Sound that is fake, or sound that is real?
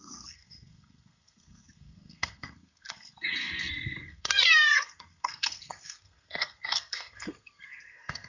fake